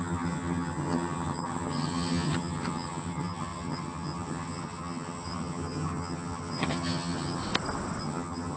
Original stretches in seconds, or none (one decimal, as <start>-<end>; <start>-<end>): 7.4-8.0